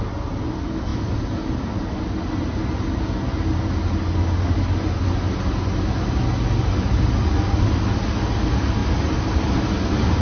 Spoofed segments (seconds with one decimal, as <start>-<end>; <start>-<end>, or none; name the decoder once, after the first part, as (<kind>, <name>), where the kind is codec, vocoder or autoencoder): none